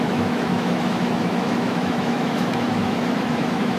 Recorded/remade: remade